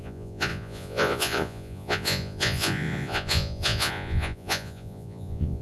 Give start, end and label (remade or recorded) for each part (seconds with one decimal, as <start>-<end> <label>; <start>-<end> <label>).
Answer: 0.0-5.6 remade